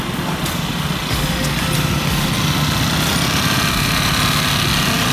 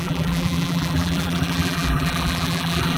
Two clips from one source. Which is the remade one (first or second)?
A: second